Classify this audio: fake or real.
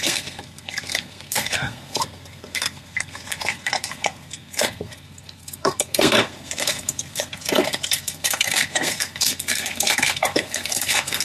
fake